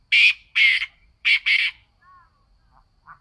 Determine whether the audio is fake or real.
real